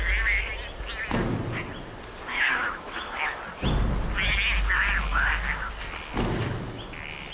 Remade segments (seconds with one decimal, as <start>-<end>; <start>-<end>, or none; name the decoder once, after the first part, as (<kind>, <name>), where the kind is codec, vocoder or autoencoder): 2.3-3.4 (autoencoder, DAC-VAE); 5.1-5.7